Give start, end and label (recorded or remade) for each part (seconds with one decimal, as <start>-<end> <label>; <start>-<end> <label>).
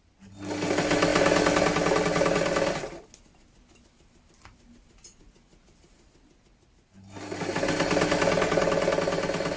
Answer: 0.0-9.6 recorded